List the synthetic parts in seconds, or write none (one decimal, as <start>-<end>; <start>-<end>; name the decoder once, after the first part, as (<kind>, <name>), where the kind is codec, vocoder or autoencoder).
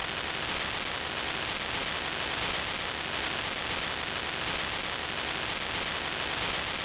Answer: 0.0-1.1 (vocoder, BigVGAN v2)